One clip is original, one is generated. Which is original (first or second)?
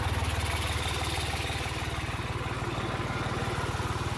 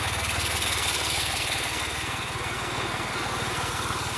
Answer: first